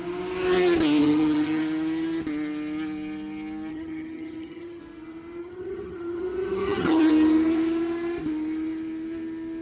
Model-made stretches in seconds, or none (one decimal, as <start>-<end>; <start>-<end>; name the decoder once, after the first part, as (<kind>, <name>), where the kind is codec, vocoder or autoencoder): 1.0-1.6 (vocoder, HiFi-GAN); 3.7-4.8; 5.4-7.1